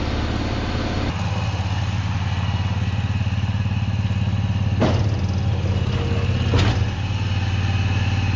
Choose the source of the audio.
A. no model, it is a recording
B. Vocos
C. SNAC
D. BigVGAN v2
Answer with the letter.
A